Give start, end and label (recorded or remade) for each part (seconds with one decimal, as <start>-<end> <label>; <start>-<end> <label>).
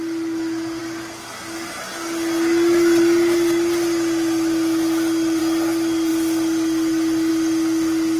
0.0-8.2 recorded